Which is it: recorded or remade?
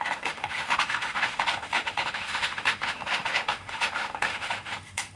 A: remade